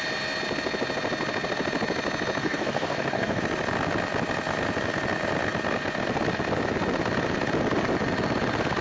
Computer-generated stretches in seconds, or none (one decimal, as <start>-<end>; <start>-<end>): 2.4-3.4